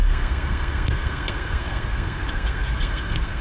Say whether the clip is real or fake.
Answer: fake